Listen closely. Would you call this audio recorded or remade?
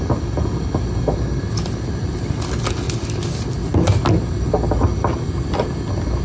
recorded